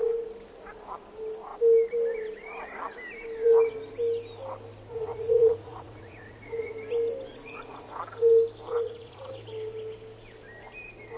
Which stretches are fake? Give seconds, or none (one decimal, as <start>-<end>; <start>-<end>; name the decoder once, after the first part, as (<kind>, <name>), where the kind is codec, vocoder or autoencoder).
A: 4.9-6.7 (vocoder, Vocos); 7.3-8.0; 8.7-9.3